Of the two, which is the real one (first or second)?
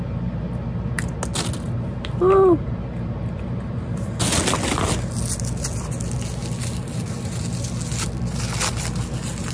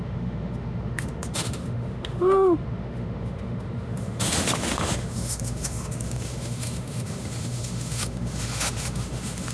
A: first